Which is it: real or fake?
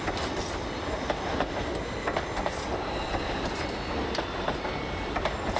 real